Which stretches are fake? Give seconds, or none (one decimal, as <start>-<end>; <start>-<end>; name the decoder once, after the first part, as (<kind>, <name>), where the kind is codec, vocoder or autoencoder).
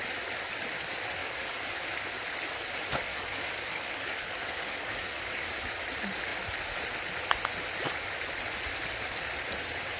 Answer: 1.2-1.8 (codec, DAC); 3.1-5.6